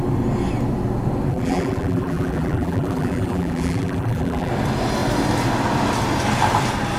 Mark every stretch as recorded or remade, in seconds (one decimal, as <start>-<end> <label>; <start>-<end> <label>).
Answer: 0.0-1.3 recorded; 1.3-4.5 remade; 4.5-7.0 recorded